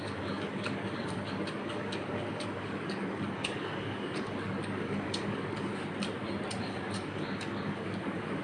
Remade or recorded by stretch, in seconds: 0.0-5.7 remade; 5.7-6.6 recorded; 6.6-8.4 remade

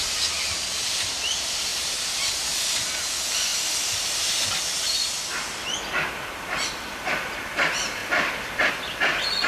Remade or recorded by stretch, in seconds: 0.0-1.7 remade; 1.7-2.3 recorded; 2.3-3.5 remade; 3.5-6.1 recorded; 6.1-9.5 remade

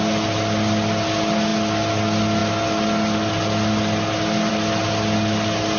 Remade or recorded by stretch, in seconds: 0.0-5.8 recorded

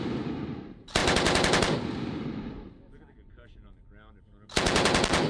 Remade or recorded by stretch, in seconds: 0.0-5.3 recorded